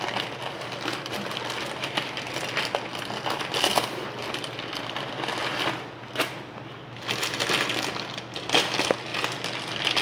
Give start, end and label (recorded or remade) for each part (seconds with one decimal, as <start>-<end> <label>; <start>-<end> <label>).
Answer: 0.0-10.0 recorded